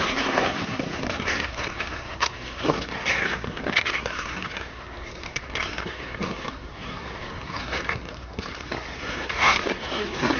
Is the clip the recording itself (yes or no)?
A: no